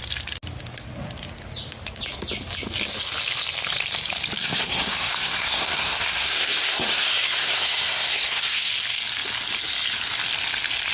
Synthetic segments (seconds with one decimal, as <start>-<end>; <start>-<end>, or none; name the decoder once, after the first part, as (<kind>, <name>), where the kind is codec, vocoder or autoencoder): 4.4-8.7 (codec, SNAC)